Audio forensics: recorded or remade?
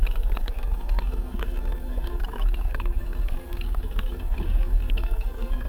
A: remade